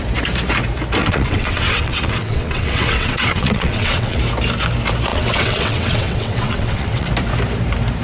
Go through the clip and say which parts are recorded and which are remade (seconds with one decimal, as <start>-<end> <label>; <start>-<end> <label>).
0.0-1.0 recorded; 1.0-4.2 remade; 4.2-5.1 recorded; 5.1-7.1 remade; 7.1-8.0 recorded